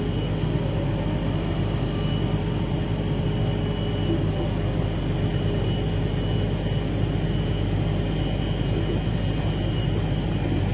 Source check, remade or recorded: recorded